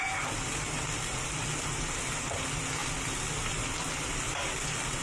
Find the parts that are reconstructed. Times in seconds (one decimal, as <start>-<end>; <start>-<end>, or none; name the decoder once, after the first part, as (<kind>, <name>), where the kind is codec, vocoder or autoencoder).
none